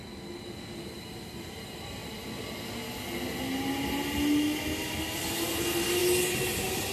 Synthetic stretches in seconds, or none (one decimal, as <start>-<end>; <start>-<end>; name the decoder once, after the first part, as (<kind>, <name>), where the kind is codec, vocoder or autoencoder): none